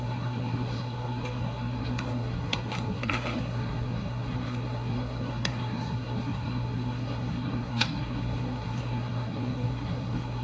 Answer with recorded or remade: remade